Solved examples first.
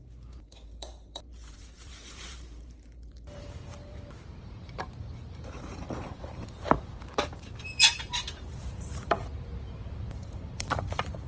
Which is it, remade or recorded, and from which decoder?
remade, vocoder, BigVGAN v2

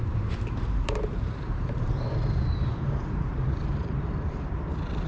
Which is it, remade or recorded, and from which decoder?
remade, vocoder, BigVGAN v2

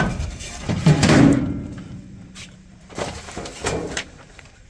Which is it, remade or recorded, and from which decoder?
remade, vocoder, BigVGAN v2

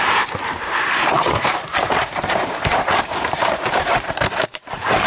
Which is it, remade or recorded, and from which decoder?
remade, vocoder, BigVGAN v2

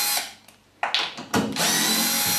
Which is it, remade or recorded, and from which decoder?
recorded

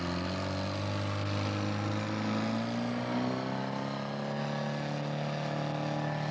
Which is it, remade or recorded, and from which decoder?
recorded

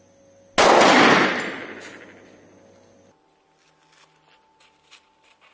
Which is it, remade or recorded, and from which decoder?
recorded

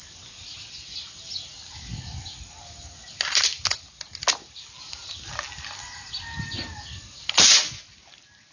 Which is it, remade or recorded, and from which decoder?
recorded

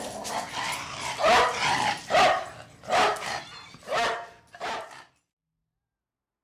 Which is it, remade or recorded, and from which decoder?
recorded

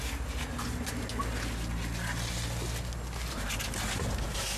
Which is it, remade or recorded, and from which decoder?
recorded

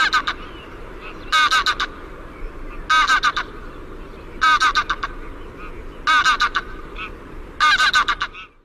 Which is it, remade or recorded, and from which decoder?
recorded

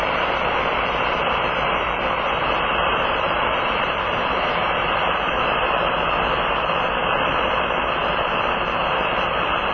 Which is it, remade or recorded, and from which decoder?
recorded